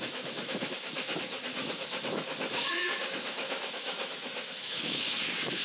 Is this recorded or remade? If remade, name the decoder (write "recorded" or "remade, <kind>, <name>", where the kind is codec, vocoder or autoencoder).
remade, autoencoder, DAC-VAE